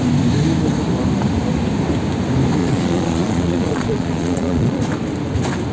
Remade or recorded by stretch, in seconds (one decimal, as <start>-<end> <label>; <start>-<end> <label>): 0.0-2.6 recorded; 2.6-4.8 remade; 4.8-5.7 recorded